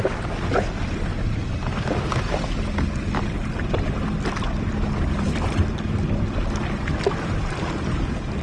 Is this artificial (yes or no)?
no